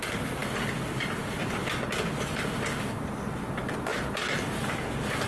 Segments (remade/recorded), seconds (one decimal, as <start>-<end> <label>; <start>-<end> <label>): 0.0-5.3 recorded